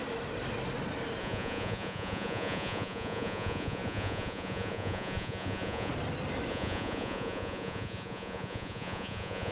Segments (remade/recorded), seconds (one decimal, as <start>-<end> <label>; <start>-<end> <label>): 0.0-1.2 recorded; 1.2-5.9 remade; 5.9-6.5 recorded; 6.5-9.5 remade